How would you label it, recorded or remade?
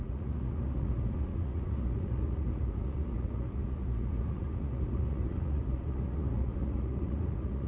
remade